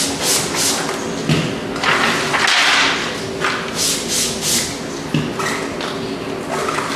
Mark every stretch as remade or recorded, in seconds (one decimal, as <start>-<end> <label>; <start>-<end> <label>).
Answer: 0.0-7.0 recorded

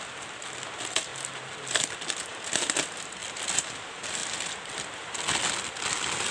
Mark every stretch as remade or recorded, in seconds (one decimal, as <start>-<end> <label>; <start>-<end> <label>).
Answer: 0.0-6.3 recorded

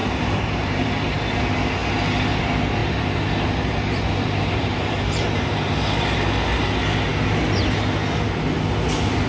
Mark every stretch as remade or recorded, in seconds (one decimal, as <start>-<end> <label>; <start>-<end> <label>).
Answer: 0.0-0.9 remade; 0.9-2.8 recorded; 2.8-5.7 remade; 5.7-9.3 recorded

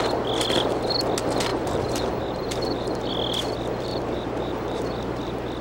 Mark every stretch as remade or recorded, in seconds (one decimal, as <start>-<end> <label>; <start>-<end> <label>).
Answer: 0.0-1.5 recorded; 1.5-3.1 remade; 3.1-3.9 recorded; 3.9-4.8 remade; 4.8-5.6 recorded

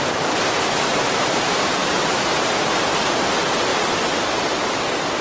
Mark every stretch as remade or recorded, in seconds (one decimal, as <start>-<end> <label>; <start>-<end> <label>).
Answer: 0.0-0.9 recorded; 0.9-2.5 remade; 2.5-3.7 recorded; 3.7-4.8 remade; 4.8-5.2 recorded

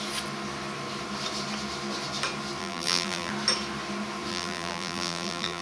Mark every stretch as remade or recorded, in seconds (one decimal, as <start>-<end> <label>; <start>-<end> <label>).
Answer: 0.0-2.6 recorded; 2.6-3.3 remade; 3.3-4.3 recorded; 4.3-5.6 remade